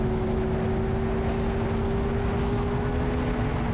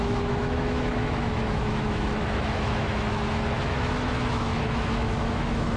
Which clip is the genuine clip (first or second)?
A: first